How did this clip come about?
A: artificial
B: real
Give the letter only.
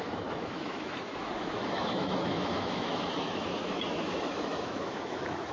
A